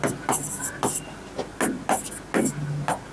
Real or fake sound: real